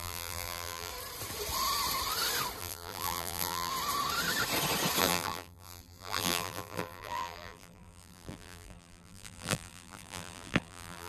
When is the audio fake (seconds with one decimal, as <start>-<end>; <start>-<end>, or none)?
0.0-0.9; 2.6-3.7; 5.0-11.1